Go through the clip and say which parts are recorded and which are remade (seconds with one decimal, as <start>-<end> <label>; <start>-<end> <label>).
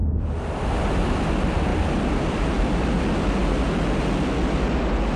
0.0-0.9 remade; 0.9-1.7 recorded; 1.7-3.0 remade; 3.0-5.2 recorded